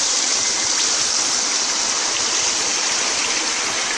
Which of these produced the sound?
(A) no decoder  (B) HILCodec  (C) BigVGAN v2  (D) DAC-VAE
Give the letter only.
A